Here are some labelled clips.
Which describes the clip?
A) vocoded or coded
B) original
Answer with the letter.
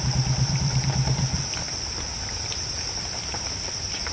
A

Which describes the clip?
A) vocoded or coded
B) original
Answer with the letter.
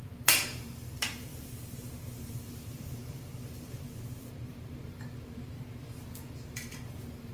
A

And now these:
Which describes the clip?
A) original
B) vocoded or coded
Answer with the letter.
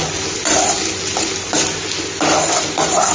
A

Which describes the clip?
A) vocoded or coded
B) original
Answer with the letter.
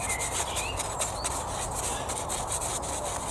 B